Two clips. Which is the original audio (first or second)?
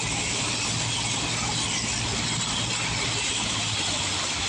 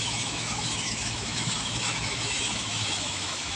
first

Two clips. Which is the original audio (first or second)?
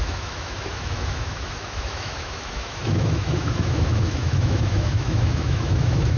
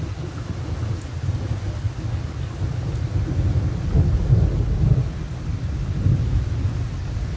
second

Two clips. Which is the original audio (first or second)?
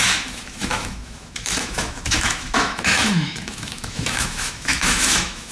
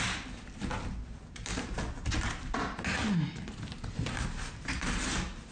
second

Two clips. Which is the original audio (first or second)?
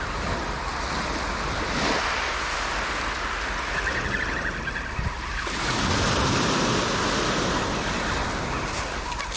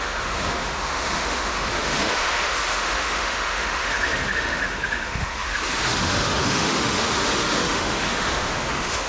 first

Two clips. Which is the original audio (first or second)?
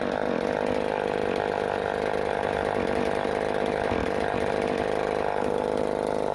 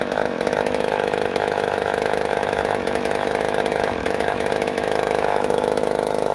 first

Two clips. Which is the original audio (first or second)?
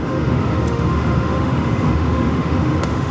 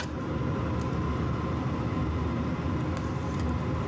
second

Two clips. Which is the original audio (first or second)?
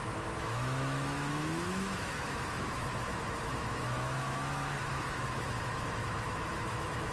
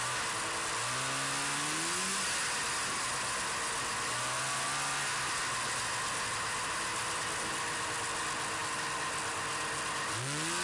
second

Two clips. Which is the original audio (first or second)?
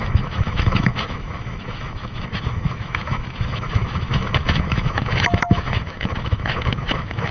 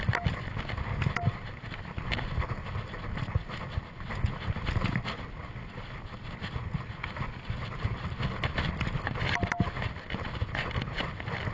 second